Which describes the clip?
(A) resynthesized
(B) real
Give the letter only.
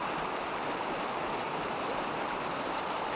B